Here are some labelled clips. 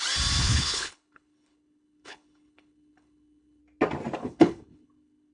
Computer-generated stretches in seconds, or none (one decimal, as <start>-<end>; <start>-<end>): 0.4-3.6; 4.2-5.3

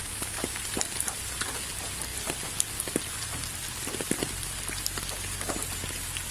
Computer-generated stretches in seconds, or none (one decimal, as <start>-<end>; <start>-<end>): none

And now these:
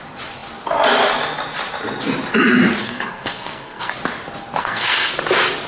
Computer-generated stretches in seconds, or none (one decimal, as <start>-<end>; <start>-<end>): 2.8-3.9; 4.6-5.1